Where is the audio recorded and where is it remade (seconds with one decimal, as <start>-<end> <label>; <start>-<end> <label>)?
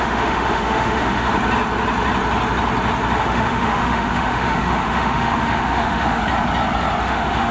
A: 0.0-1.3 remade; 1.3-3.2 recorded; 3.2-6.2 remade; 6.2-7.0 recorded; 7.0-7.5 remade